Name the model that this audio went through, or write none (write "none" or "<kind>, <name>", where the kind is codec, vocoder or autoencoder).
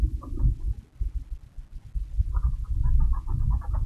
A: none